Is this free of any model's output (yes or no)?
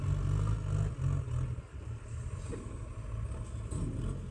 yes